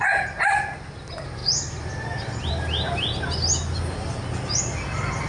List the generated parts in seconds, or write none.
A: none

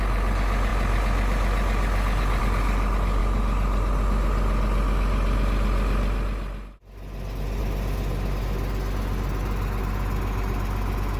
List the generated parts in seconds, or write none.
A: none

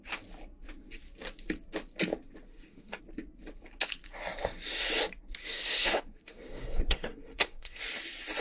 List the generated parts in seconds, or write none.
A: 2.5-3.0 (codec, SNAC); 5.4-7.8

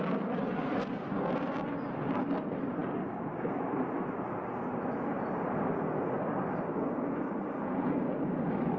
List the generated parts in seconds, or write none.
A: none

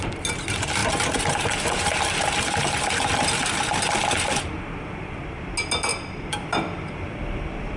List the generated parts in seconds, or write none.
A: 0.0-0.8 (vocoder, BigVGAN v2); 4.4-5.2; 6.3-7.8